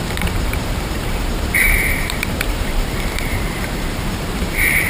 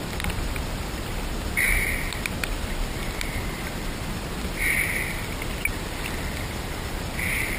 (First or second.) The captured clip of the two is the second